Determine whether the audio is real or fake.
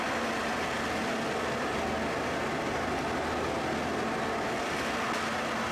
real